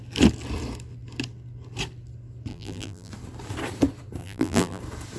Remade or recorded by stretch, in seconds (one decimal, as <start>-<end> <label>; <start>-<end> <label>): 0.0-2.5 recorded; 2.5-3.1 remade; 3.1-4.2 recorded; 4.2-4.8 remade; 4.8-5.2 recorded